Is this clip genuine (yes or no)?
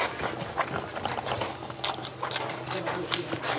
yes